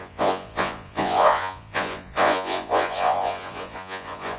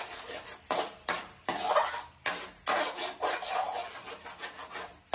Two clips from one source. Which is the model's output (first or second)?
first